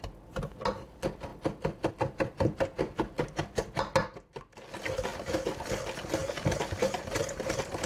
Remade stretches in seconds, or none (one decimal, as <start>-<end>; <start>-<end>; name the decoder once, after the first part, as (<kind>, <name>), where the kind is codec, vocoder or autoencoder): 5.1-5.7 (vocoder, BigVGAN v2); 6.2-7.2